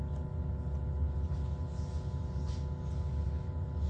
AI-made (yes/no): no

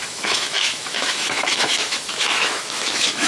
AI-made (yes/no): yes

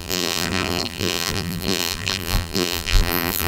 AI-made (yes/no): yes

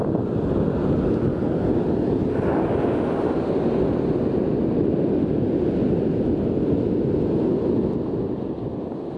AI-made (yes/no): no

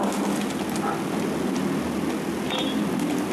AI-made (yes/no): no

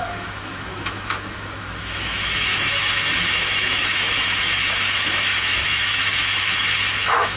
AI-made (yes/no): yes